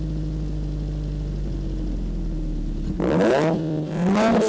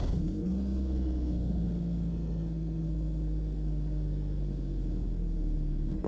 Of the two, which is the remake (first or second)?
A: second